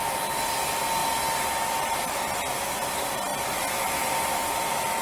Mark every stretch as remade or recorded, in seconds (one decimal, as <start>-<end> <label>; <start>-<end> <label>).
0.0-5.0 recorded